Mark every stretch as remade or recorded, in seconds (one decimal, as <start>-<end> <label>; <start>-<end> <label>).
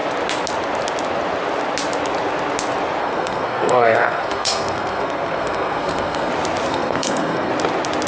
0.0-3.0 recorded; 3.0-6.3 remade; 6.3-6.7 recorded; 6.7-7.5 remade; 7.5-8.1 recorded